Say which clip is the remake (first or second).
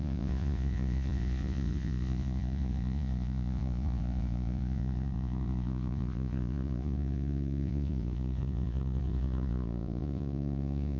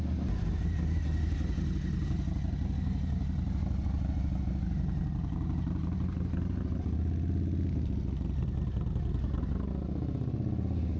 first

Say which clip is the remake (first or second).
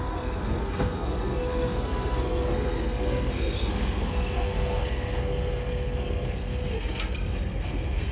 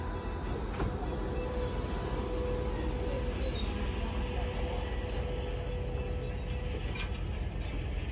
first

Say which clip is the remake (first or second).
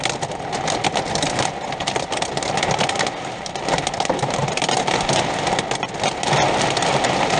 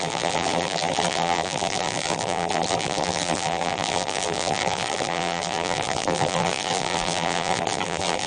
second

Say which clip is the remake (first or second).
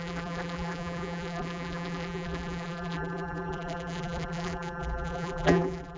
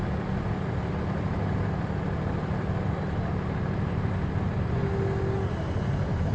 first